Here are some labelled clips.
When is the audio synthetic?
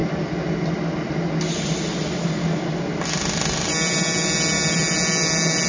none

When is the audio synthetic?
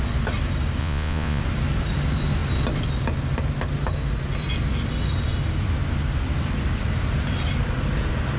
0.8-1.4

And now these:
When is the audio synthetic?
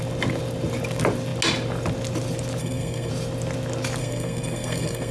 2.6-3.1; 4.0-5.1